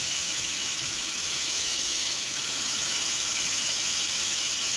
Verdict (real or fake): fake